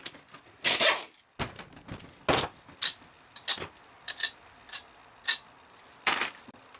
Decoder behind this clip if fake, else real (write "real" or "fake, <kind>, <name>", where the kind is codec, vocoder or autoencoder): real